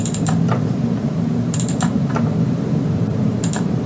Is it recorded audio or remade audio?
remade